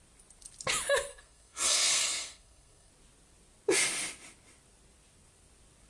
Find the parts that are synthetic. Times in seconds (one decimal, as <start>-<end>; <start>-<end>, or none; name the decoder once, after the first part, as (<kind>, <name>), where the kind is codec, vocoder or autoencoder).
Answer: 1.1-2.9 (codec, SNAC)

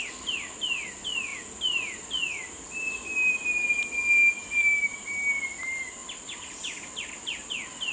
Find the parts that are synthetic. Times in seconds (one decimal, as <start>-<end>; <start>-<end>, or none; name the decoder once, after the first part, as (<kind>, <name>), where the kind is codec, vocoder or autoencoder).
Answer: none

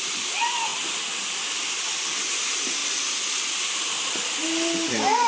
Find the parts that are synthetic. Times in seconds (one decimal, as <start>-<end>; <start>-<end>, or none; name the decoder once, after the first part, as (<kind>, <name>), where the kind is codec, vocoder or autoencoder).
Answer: none